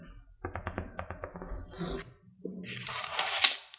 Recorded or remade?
recorded